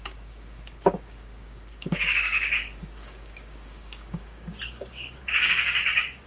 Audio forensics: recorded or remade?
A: remade